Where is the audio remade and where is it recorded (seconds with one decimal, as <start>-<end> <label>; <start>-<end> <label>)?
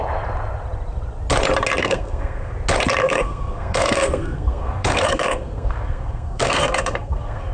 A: 0.0-1.8 recorded; 1.8-2.5 remade; 2.5-3.0 recorded; 3.0-7.5 remade